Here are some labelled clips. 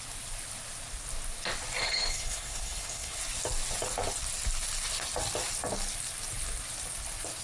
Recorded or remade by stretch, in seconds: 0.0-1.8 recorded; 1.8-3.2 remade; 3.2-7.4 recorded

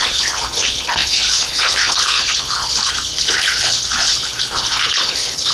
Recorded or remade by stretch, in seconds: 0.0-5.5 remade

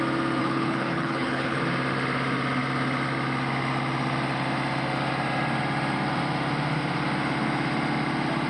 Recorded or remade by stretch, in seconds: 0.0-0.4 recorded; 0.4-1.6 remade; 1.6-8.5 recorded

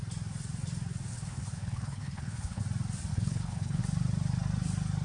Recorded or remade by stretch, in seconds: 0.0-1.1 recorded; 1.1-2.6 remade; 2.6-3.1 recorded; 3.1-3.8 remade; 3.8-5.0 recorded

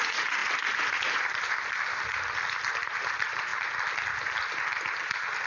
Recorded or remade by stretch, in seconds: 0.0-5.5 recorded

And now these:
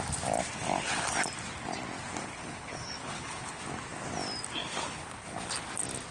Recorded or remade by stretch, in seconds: 0.0-2.2 recorded; 2.2-3.6 remade; 3.6-4.6 recorded; 4.6-5.5 remade; 5.5-6.1 recorded

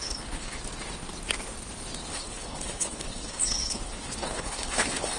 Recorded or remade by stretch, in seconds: 0.0-0.6 remade; 0.6-2.1 recorded; 2.1-5.2 remade

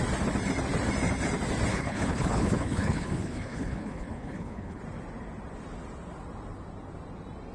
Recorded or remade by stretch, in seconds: 0.0-1.7 recorded; 1.7-4.8 remade; 4.8-7.5 recorded